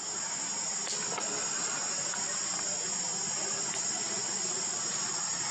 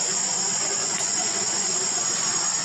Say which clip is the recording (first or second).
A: first